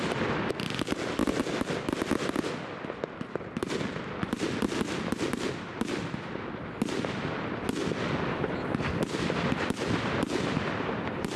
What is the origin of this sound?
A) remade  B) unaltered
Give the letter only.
B